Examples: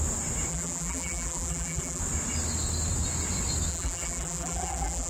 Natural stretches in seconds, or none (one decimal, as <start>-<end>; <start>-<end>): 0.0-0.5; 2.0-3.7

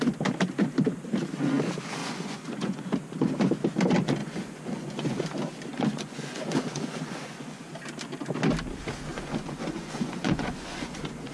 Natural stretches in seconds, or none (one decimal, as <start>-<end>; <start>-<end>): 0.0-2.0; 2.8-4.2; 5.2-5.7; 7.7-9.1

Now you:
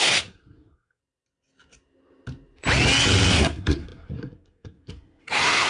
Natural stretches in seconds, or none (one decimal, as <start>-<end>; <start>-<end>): 1.0-3.3

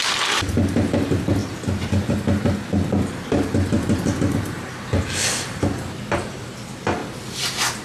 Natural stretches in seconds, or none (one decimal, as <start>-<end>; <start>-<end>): none